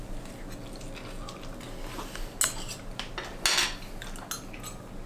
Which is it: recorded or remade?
recorded